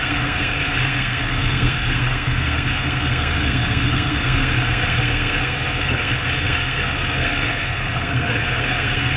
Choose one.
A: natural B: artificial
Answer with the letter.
B